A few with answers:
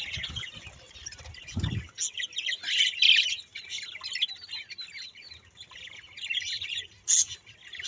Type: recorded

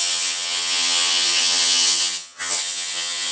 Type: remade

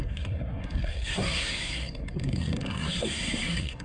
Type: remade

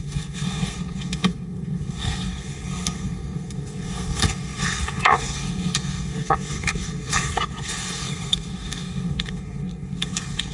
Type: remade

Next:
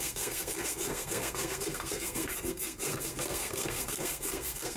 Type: remade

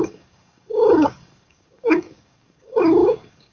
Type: remade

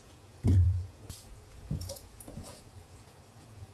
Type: remade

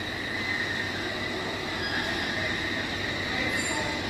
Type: recorded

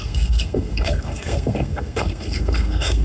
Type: remade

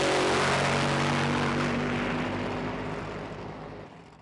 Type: recorded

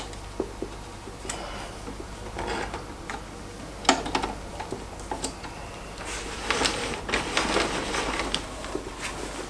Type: recorded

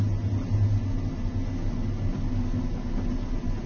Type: recorded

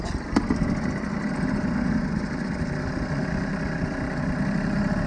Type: recorded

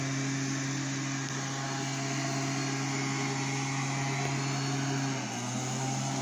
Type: recorded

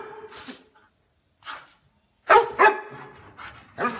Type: recorded